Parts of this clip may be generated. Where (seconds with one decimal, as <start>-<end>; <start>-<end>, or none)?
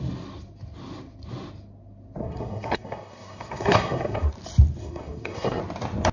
2.2-4.3; 4.8-5.6